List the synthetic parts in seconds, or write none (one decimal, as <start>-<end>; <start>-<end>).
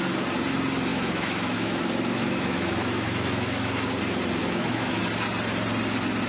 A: 0.9-3.9; 4.4-5.0